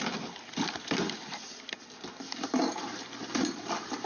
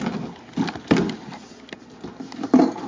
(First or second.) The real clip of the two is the second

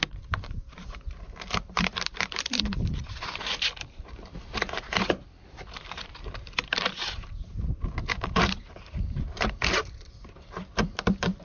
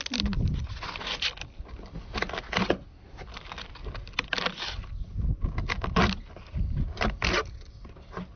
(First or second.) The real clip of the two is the second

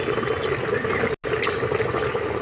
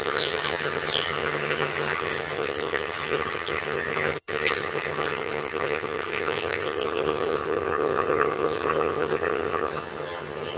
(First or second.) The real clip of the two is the first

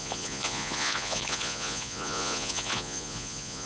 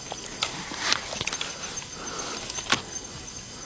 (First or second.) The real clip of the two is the second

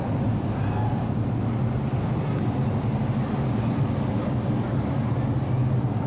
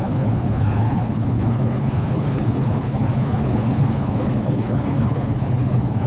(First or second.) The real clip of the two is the first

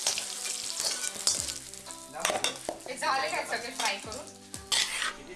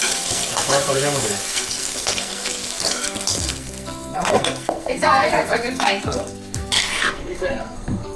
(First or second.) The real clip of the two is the first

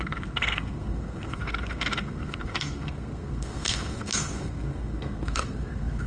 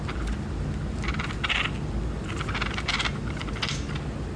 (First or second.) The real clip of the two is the second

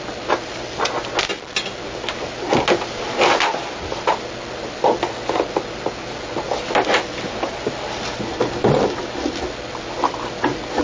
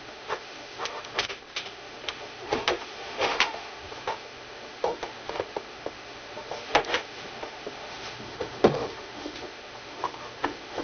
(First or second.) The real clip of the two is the first